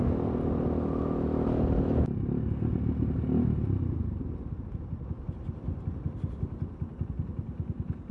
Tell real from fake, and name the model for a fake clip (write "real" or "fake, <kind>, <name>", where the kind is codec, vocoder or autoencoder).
real